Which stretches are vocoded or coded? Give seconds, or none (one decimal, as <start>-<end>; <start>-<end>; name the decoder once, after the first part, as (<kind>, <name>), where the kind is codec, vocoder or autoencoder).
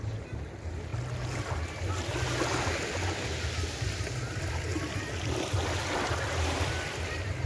0.0-0.9 (vocoder, BigVGAN v2); 4.1-7.5